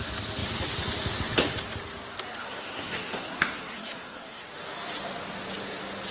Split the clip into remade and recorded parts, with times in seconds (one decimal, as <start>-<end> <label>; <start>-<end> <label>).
0.0-2.4 recorded; 2.4-4.4 remade; 4.4-6.1 recorded